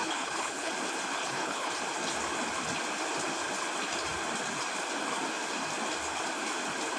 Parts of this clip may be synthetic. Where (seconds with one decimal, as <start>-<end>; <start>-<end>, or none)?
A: 0.0-0.7; 1.2-1.7